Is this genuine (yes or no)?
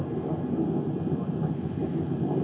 yes